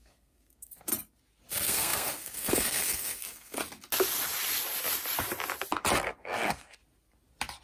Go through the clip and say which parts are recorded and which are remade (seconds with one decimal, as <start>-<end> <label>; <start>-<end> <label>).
0.0-0.9 remade; 0.9-1.5 recorded; 1.5-3.6 remade; 3.6-6.2 recorded; 6.2-6.8 remade; 6.8-7.6 recorded